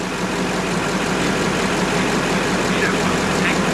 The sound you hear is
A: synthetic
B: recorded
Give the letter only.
B